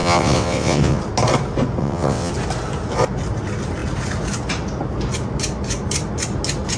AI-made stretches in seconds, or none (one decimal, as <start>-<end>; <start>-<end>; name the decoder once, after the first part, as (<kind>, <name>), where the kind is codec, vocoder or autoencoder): 0.0-1.0 (vocoder, WaveNeXt); 1.8-2.3